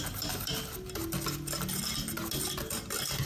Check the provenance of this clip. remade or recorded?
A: recorded